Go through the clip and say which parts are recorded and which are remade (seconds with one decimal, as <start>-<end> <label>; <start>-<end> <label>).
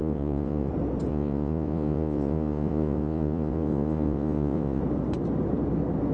0.0-0.7 remade; 0.7-1.1 recorded; 1.1-4.8 remade; 4.8-6.1 recorded